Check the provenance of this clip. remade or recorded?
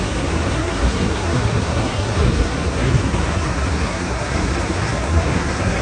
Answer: remade